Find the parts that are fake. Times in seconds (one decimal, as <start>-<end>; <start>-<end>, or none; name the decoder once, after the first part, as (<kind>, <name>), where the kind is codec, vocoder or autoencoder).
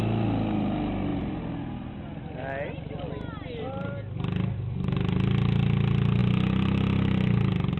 none